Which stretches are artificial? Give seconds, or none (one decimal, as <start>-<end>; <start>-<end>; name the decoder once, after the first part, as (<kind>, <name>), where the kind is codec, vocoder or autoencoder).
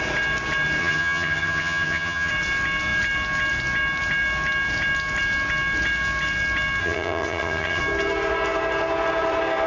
0.8-2.3 (vocoder, HiFi-GAN); 6.8-7.8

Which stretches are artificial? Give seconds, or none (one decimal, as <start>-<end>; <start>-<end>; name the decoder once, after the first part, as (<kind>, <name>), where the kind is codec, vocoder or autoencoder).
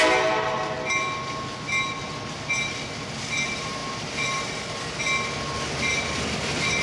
none